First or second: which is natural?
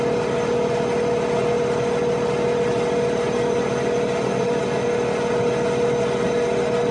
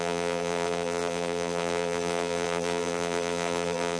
first